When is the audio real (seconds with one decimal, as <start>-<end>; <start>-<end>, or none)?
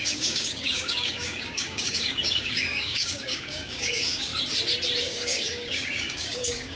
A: 4.3-5.0